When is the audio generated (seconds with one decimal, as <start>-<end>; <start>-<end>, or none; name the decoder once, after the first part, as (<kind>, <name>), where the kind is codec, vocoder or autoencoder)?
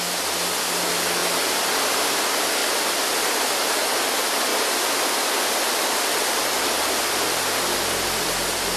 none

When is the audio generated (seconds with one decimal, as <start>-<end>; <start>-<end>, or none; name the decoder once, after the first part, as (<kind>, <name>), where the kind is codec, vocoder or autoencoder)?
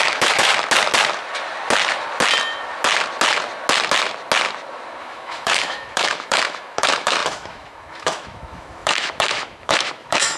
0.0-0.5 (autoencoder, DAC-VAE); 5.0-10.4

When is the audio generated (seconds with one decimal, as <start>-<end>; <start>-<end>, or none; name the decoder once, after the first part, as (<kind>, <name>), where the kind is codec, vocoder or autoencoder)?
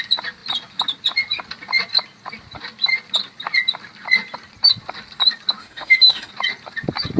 5.6-6.3 (autoencoder, DAC-VAE)